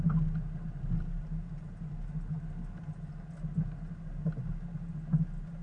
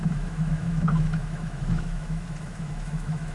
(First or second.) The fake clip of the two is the second